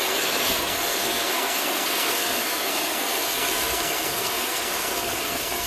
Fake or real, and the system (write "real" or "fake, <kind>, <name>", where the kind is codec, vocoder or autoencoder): fake, codec, SNAC